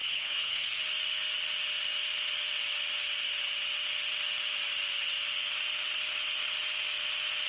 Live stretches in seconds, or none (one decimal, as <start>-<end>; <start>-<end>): 0.8-7.5

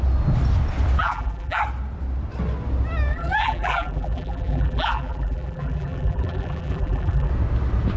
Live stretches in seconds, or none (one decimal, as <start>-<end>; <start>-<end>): 0.0-1.0; 1.6-3.1; 7.3-8.0

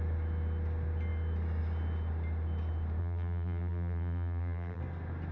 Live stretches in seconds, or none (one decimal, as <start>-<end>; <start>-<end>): 0.0-3.0; 4.8-5.3

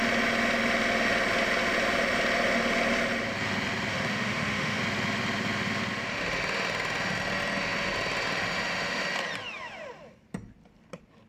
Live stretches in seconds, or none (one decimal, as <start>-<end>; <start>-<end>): 0.0-3.9; 4.8-11.3

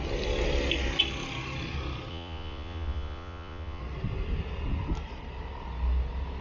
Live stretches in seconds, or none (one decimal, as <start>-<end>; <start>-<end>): 0.0-2.1; 3.8-6.4